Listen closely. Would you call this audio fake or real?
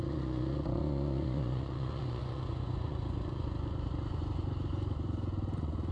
fake